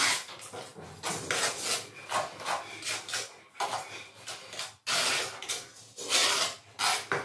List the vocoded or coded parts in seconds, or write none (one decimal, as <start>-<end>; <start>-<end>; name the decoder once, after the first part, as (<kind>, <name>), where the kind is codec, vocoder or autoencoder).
none